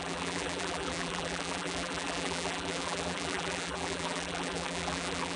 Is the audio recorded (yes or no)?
no